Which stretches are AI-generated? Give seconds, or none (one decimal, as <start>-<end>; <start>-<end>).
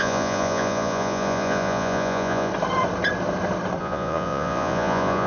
0.0-2.5; 3.8-5.3